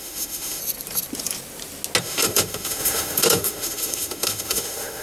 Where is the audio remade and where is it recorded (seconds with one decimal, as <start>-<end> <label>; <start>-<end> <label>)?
0.0-0.6 remade; 0.6-2.0 recorded; 2.0-5.0 remade